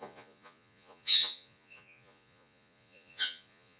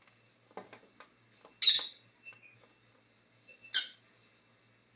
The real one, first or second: second